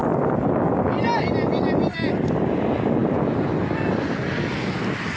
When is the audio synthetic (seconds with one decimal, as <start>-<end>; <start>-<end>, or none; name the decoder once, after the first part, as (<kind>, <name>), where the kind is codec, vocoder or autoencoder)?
none